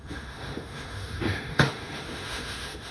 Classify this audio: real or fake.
fake